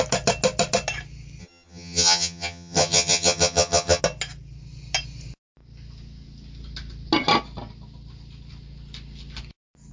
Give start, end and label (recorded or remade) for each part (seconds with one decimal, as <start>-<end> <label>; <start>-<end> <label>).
0.0-1.4 recorded; 1.4-4.0 remade; 4.0-9.9 recorded